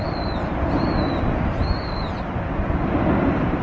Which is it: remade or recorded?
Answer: recorded